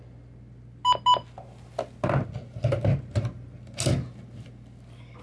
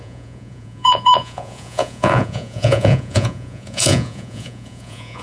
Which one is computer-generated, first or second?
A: second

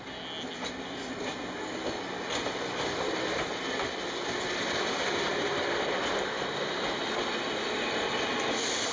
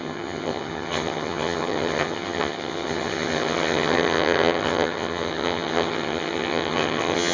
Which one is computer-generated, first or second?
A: second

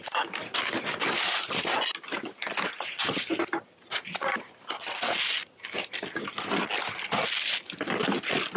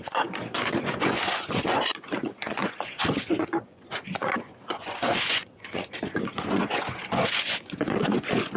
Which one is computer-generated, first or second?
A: second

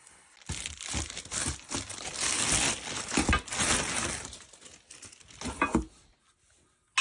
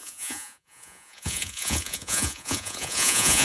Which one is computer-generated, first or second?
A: second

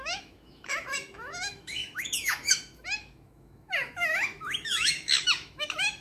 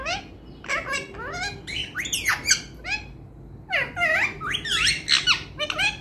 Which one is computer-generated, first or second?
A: first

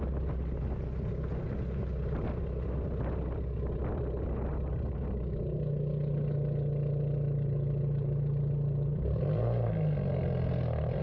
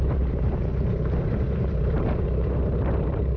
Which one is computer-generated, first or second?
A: second